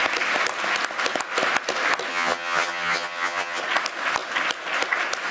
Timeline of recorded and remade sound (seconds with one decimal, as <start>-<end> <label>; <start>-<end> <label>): 0.0-2.1 recorded; 2.1-3.6 remade; 3.6-5.3 recorded